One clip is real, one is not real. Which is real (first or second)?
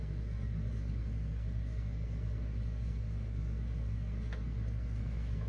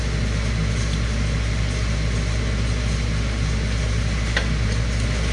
second